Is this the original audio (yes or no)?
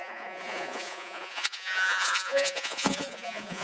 no